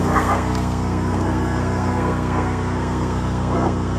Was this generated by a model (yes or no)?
yes